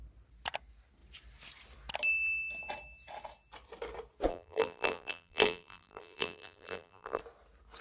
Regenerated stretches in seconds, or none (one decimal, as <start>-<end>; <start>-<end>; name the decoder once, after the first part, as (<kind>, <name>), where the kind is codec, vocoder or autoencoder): 4.3-7.2 (vocoder, BigVGAN v2)